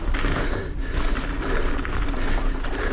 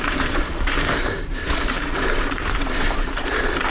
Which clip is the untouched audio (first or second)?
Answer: first